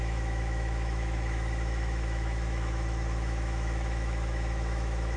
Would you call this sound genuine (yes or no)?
no